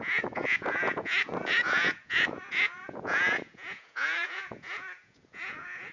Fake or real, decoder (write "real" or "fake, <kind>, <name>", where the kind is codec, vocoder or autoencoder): fake, vocoder, Vocos